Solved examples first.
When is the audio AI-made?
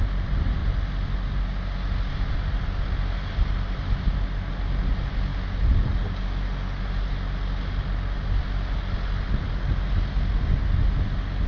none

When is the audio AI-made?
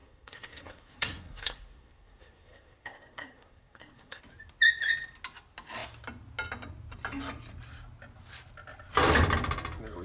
0.0-4.2 (codec, SNAC)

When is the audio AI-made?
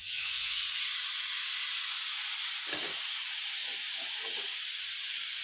0.0-0.6 (vocoder, Vocos)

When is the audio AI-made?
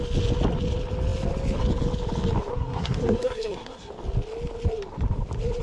2.5-3.9 (codec, SNAC)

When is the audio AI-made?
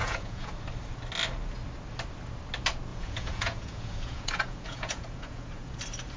0.0-0.5 (vocoder, Vocos); 2.9-5.8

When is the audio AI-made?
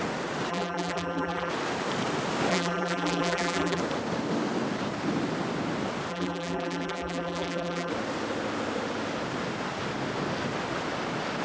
0.5-1.5 (vocoder, BigVGAN v2); 2.5-3.8; 6.1-7.9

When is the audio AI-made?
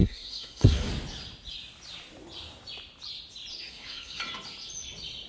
0.0-0.9 (codec, SNAC); 3.5-4.2